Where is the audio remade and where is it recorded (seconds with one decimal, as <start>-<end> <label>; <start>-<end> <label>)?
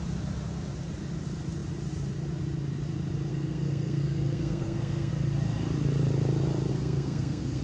0.0-3.3 recorded; 3.3-5.1 remade; 5.1-6.7 recorded; 6.7-7.6 remade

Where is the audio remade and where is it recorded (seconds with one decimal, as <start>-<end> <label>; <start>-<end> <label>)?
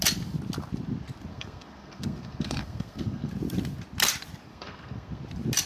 0.0-1.3 recorded; 1.3-3.3 remade; 3.3-4.5 recorded; 4.5-5.2 remade; 5.2-5.7 recorded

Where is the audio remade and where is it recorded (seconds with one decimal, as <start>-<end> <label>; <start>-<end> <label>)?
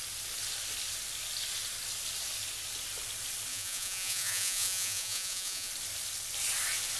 0.0-3.5 recorded; 3.5-5.7 remade; 5.7-7.0 recorded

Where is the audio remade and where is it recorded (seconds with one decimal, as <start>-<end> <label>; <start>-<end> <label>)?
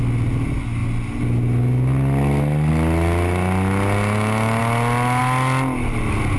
0.0-6.4 recorded